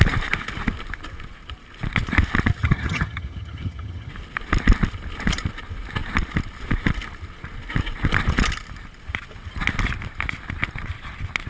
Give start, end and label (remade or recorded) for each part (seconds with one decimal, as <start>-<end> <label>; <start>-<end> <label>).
0.0-2.6 recorded; 2.6-4.1 remade; 4.1-11.5 recorded